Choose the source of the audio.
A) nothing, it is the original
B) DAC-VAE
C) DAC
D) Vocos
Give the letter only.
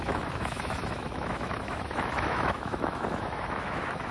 B